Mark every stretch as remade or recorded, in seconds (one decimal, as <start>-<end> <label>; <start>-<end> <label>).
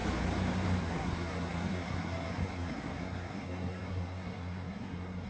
0.0-0.8 recorded; 0.8-5.3 remade